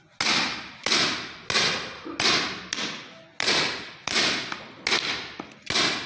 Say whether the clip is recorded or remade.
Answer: recorded